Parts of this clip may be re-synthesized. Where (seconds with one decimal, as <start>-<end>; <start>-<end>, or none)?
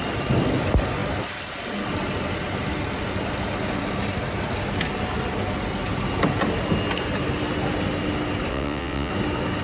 8.5-9.1